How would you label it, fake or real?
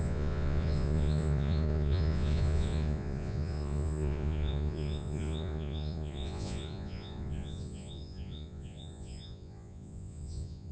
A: fake